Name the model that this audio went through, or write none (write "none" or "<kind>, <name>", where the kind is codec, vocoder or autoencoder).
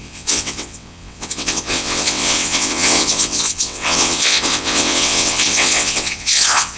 vocoder, WaveNeXt